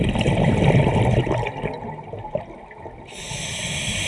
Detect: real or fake real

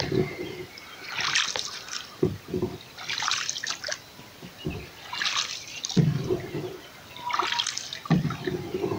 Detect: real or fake fake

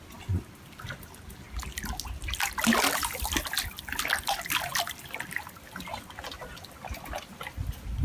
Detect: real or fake real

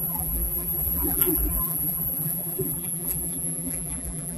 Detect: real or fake fake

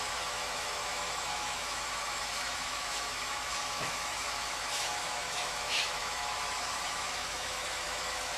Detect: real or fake fake